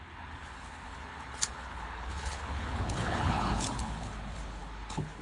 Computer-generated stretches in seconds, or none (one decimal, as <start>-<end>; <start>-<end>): 0.0-5.2